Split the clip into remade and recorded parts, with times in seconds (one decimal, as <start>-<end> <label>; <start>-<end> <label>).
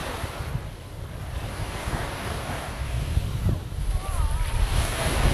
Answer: 0.0-1.5 recorded; 1.5-3.2 remade; 3.2-4.6 recorded; 4.6-5.3 remade